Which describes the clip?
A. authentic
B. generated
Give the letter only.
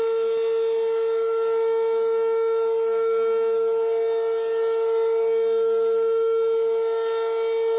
A